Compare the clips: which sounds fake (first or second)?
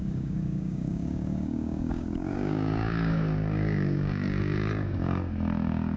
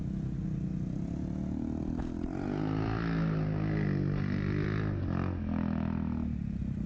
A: first